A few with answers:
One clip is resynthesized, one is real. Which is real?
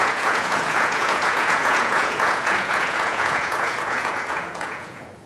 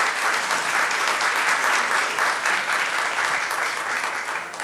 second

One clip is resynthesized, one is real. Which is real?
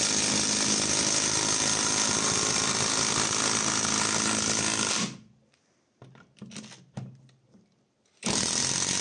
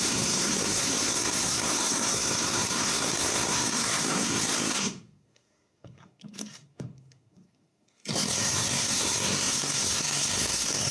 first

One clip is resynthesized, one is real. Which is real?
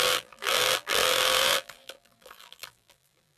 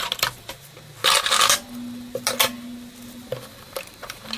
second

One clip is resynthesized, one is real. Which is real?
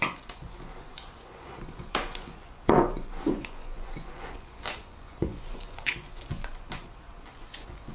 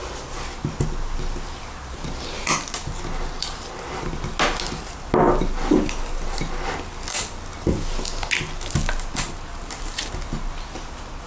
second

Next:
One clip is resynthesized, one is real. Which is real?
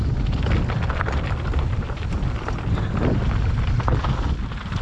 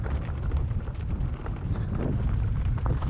first